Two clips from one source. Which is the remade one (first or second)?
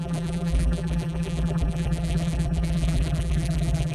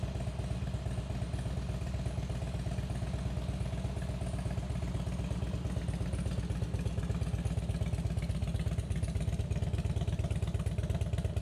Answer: first